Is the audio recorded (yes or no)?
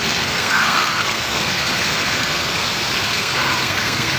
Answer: no